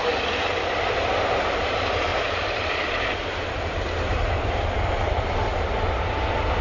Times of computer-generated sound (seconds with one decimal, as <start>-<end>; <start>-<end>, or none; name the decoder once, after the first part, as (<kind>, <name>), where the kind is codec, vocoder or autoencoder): 2.1-4.0 (vocoder, BigVGAN v2)